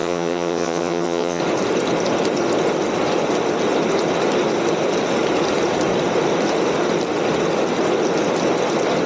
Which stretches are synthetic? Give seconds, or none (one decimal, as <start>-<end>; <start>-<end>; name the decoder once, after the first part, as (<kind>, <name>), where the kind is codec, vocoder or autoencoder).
0.0-1.4 (vocoder, HiFi-GAN)